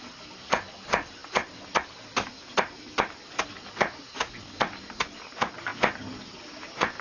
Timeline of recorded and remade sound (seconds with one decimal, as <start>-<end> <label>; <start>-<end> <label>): 0.0-7.0 recorded